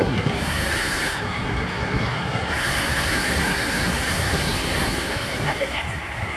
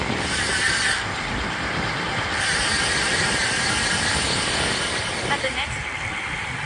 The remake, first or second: first